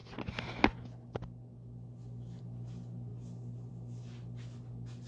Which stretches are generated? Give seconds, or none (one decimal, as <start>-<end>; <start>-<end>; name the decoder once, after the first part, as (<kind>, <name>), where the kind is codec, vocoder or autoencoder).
none